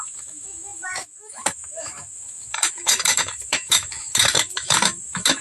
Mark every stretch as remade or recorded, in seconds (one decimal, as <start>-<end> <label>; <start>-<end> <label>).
0.0-5.4 remade